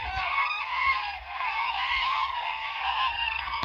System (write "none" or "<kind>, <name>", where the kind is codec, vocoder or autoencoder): codec, SNAC